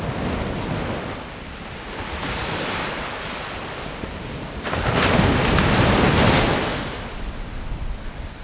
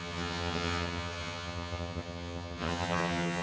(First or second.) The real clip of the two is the first